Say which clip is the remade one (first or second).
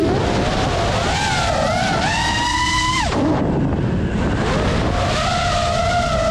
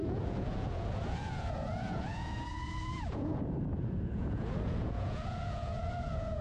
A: second